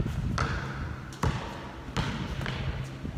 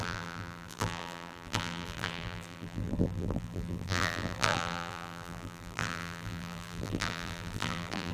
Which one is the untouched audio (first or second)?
first